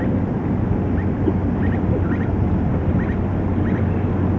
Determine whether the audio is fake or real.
real